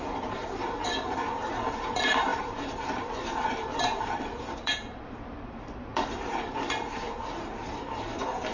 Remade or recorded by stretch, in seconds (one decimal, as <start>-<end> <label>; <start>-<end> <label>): 0.0-8.5 remade